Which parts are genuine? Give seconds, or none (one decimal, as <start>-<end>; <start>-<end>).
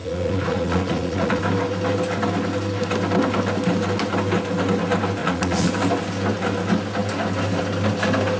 1.4-5.2; 5.7-8.4